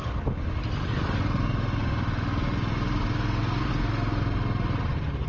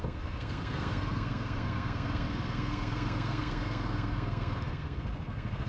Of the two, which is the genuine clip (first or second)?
first